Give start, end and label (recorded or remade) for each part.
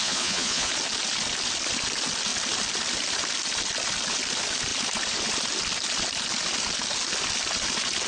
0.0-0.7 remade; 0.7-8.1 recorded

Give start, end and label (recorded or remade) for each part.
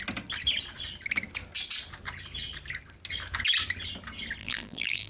0.0-4.4 recorded; 4.4-5.1 remade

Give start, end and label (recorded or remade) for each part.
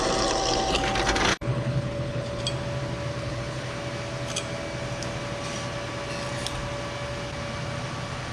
0.0-1.3 recorded; 1.3-2.4 remade; 2.4-3.1 recorded; 3.1-3.7 remade; 3.7-8.3 recorded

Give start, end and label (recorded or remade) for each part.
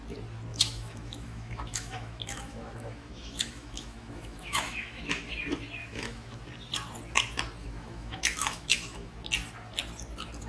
0.0-0.5 recorded; 0.5-5.3 remade; 5.3-5.8 recorded; 5.8-6.4 remade; 6.4-7.6 recorded; 7.6-9.1 remade; 9.1-10.5 recorded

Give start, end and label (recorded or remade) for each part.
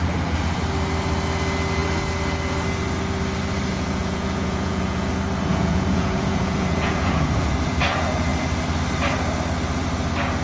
0.0-3.7 recorded; 3.7-5.1 remade; 5.1-5.5 recorded; 5.5-7.5 remade; 7.5-10.4 recorded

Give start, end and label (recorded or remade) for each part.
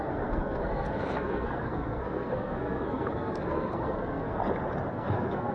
0.0-4.4 remade; 4.4-4.9 recorded; 4.9-5.5 remade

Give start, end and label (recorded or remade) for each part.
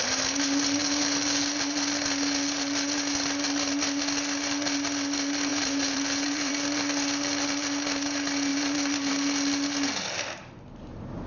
0.0-5.5 recorded; 5.5-6.5 remade; 6.5-8.5 recorded; 8.5-9.1 remade; 9.1-11.3 recorded